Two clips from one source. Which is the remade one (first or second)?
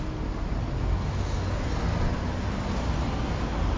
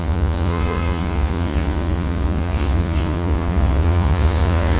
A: second